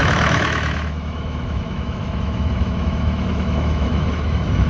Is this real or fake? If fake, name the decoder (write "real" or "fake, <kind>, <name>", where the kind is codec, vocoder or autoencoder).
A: fake, autoencoder, DAC-VAE